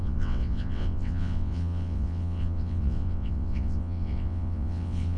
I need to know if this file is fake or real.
fake